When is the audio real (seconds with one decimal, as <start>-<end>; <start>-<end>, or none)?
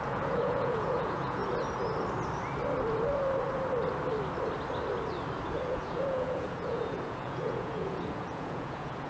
1.4-5.5